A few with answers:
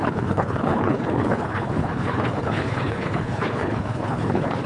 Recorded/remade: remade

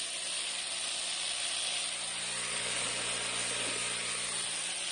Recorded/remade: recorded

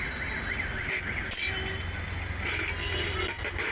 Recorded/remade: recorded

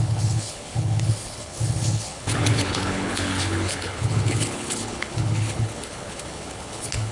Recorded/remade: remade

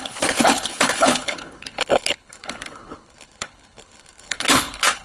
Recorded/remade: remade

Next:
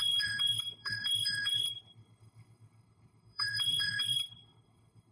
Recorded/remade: remade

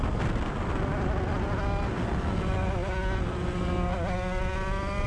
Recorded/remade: recorded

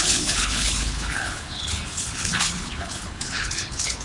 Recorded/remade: remade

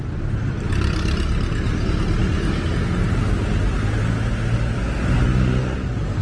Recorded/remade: recorded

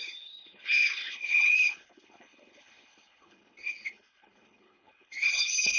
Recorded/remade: remade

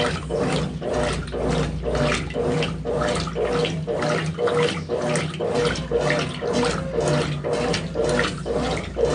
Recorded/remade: recorded